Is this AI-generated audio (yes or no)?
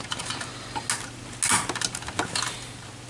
no